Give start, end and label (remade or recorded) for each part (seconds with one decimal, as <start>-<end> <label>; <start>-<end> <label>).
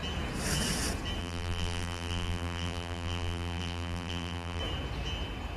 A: 0.0-1.2 recorded; 1.2-4.6 remade; 4.6-5.6 recorded